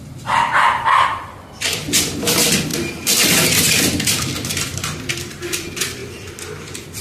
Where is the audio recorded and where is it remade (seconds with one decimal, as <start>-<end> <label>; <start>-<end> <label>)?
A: 0.0-2.7 remade; 2.7-4.0 recorded; 4.0-7.0 remade